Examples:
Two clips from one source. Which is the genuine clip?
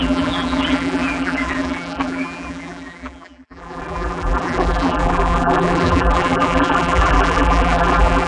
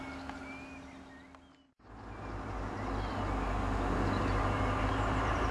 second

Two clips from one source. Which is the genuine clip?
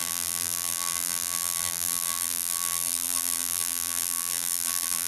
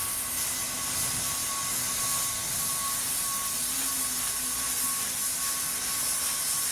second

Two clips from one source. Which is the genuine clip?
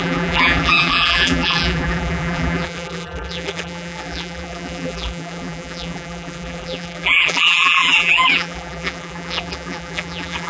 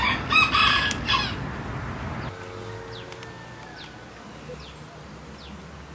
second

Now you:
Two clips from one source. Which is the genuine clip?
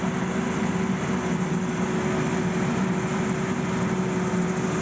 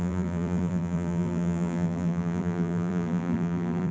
first